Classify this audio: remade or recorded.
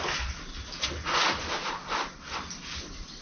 recorded